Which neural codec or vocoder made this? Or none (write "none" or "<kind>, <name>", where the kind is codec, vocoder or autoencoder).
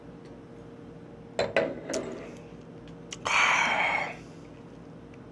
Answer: none